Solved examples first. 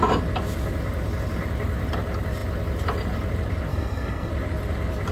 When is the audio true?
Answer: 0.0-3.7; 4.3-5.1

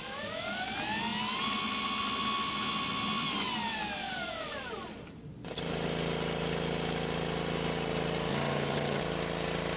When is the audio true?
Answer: 0.0-8.3; 9.0-9.8